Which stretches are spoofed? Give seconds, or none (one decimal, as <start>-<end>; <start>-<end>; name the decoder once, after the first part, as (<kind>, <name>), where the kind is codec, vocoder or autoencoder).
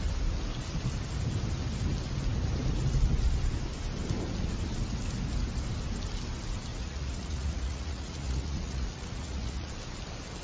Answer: 6.7-9.7 (vocoder, Vocos)